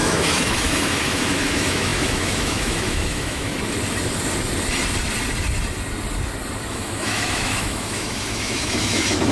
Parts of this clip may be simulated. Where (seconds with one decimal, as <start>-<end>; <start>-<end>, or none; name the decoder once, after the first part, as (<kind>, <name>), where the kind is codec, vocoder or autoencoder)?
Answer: 0.0-3.5 (autoencoder, DAC-VAE); 6.7-9.3